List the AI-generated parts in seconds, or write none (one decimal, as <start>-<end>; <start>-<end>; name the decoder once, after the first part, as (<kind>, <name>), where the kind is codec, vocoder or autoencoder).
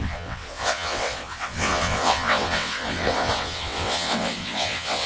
0.0-5.1 (vocoder, WaveNeXt)